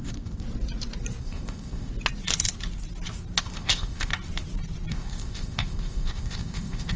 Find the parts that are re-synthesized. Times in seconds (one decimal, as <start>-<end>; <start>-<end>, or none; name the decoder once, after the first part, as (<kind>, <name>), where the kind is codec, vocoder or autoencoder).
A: 0.0-0.4 (codec, ZipCodec); 1.2-1.9; 3.4-4.1; 4.9-7.0